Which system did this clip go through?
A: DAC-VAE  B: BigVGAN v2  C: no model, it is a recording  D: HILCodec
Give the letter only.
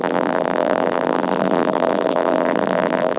B